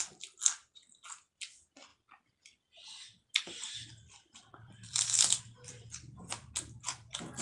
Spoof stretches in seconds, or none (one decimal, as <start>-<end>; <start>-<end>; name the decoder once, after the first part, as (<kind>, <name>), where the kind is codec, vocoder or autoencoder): none

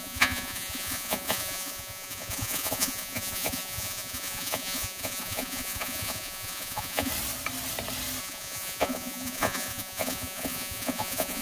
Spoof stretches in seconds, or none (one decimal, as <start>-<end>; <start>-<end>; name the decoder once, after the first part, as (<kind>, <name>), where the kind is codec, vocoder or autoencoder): 0.0-7.1 (vocoder, Vocos); 8.2-11.4

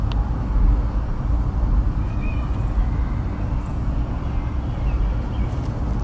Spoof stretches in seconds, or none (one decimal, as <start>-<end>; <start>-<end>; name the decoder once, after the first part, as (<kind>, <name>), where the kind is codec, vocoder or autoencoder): 3.7-4.2 (vocoder, Vocos)